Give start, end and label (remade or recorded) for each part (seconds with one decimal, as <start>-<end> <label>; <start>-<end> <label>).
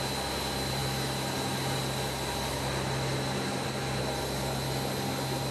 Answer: 0.0-5.5 recorded